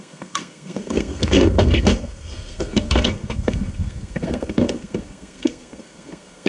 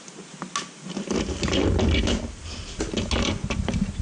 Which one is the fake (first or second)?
first